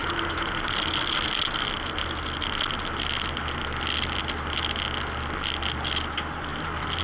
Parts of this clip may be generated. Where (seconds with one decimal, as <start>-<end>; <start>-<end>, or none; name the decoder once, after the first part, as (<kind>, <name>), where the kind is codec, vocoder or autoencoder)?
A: none